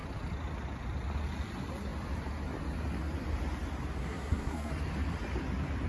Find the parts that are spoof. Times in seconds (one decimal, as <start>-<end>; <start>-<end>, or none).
4.0-4.7